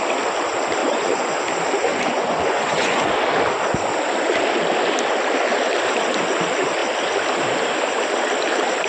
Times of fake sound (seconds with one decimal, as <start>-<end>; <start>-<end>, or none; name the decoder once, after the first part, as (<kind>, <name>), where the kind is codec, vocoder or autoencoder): 0.8-1.4 (vocoder, Vocos); 1.9-3.1